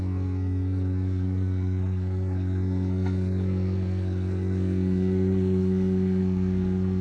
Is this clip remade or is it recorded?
remade